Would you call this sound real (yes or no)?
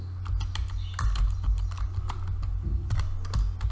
yes